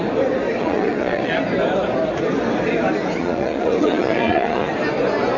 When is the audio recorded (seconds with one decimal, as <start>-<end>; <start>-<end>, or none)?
0.0-0.6; 1.3-3.2; 4.7-5.4